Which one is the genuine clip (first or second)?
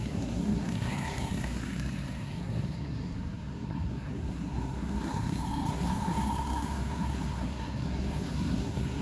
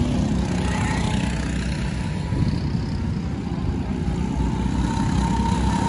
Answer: second